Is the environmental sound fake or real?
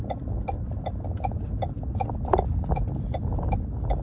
real